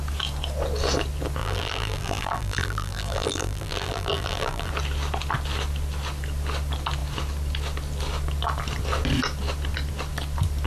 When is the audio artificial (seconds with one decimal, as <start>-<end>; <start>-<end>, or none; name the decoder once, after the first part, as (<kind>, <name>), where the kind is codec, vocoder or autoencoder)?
1.4-4.7 (vocoder, BigVGAN v2)